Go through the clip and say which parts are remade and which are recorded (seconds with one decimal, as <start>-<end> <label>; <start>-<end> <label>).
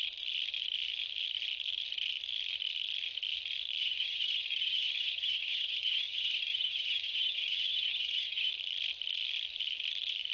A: 0.0-3.8 recorded; 3.8-8.5 remade; 8.5-10.3 recorded